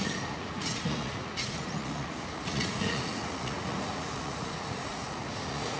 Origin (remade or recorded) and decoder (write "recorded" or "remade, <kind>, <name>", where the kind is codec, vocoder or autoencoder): remade, vocoder, Vocos